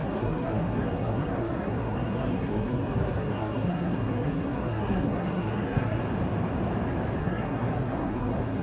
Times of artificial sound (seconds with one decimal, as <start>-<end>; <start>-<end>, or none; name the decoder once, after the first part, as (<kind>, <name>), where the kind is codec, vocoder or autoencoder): 0.0-6.0 (codec, SNAC); 7.2-8.6